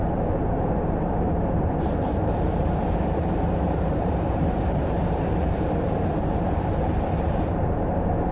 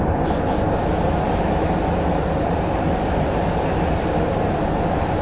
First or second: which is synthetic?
first